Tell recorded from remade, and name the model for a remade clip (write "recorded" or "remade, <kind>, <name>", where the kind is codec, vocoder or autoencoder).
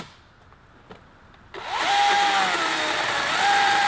recorded